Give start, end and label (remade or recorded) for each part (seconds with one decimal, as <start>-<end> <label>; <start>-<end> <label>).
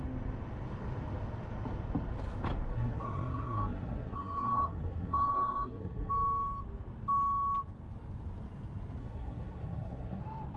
0.0-2.7 recorded; 2.7-6.1 remade; 6.1-9.0 recorded; 9.0-10.2 remade; 10.2-10.6 recorded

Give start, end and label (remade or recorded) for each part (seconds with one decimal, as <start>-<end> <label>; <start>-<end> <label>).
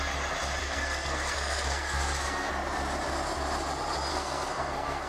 0.0-0.6 recorded; 0.6-2.5 remade; 2.5-4.1 recorded; 4.1-5.1 remade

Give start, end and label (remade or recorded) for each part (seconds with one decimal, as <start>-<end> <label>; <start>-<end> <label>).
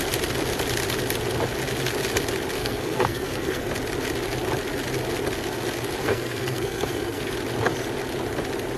0.0-2.6 recorded; 2.6-3.7 remade; 3.7-6.0 recorded; 6.0-7.3 remade; 7.3-8.8 recorded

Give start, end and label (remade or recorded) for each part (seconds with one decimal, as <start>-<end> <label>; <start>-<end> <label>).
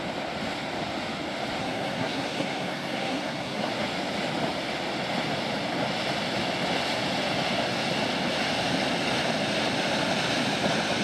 0.0-1.6 recorded; 1.6-3.7 remade; 3.7-11.0 recorded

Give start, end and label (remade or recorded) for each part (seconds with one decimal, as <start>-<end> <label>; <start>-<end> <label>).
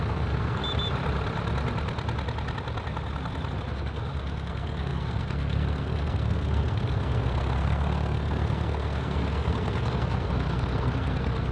0.0-0.6 remade; 0.6-3.7 recorded; 3.7-11.5 remade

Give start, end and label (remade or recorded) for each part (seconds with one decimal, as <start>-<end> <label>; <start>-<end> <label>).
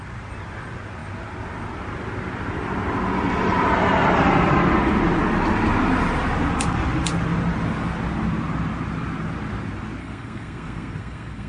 0.0-10.0 recorded; 10.0-11.5 remade